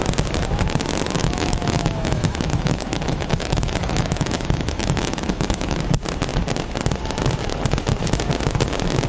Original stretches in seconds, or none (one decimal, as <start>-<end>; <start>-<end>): 0.0-1.2; 5.8-9.1